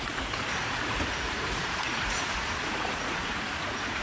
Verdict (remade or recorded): remade